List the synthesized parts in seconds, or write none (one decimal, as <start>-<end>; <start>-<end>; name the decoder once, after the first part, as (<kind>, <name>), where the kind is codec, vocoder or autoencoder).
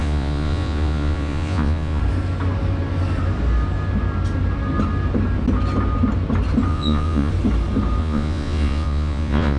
0.0-2.0 (vocoder, Vocos); 6.7-7.3; 8.0-9.6